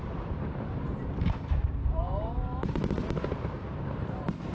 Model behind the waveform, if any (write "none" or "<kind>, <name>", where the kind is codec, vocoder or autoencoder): vocoder, BigVGAN v2